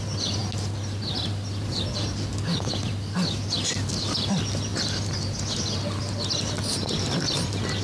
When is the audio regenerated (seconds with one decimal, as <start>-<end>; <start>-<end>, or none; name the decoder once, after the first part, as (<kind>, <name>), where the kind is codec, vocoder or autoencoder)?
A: none